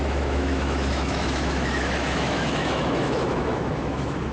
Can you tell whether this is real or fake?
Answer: fake